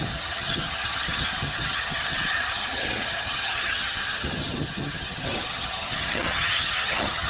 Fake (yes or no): yes